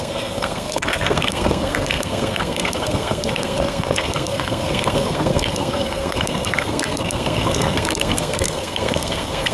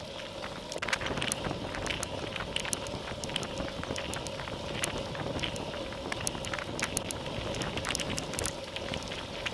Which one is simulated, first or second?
first